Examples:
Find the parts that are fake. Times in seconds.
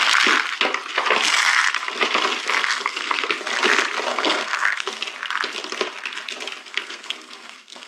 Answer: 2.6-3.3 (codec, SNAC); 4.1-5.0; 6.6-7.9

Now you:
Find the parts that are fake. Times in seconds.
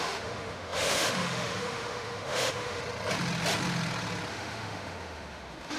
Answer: 0.0-2.8 (autoencoder, DAC-VAE); 4.3-5.8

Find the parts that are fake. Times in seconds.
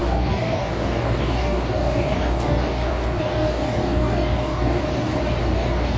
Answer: 0.0-4.8 (codec, DAC); 5.4-6.0